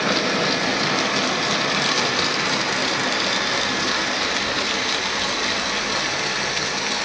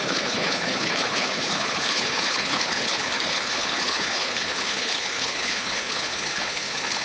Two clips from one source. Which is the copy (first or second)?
second